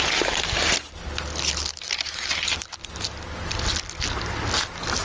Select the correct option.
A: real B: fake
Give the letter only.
A